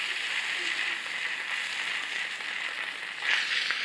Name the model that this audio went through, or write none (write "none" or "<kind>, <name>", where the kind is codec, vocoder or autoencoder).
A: none